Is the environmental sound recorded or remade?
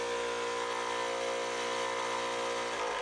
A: recorded